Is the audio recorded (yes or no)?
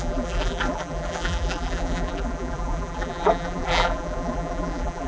no